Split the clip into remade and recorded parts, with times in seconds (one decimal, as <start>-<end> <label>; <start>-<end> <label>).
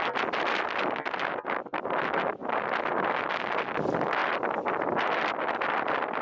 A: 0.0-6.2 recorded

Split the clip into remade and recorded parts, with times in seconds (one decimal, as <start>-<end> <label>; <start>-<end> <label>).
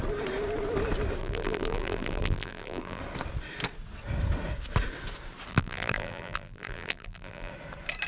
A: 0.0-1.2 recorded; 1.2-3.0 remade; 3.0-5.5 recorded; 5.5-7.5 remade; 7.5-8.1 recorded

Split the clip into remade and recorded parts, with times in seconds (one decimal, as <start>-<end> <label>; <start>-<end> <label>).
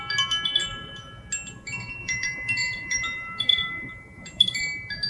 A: 0.0-0.6 recorded; 0.6-1.1 remade; 1.1-2.0 recorded; 2.0-4.6 remade; 4.6-5.1 recorded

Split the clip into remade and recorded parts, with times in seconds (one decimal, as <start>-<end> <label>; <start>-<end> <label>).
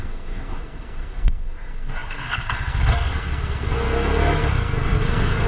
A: 0.0-5.5 remade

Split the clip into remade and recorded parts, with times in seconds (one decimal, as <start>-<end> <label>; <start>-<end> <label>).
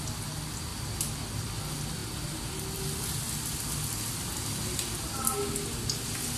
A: 0.0-6.4 recorded